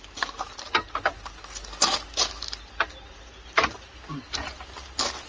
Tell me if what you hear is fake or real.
real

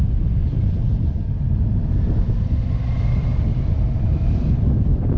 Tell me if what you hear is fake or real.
real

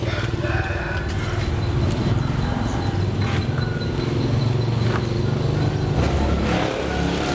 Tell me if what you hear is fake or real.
real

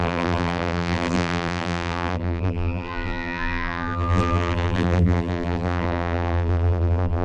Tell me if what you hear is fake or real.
fake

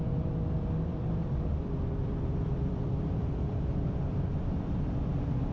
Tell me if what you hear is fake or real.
fake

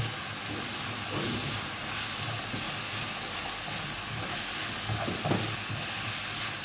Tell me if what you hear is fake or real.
real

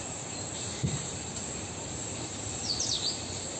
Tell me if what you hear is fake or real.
fake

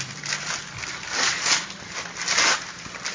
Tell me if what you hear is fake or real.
real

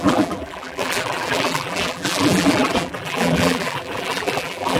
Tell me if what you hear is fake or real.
fake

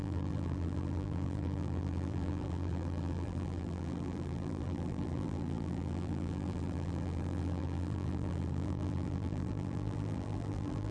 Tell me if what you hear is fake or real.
fake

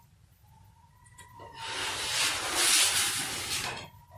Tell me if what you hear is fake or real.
real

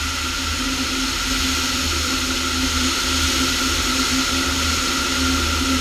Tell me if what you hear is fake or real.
real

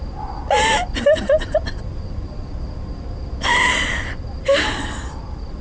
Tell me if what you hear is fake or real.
real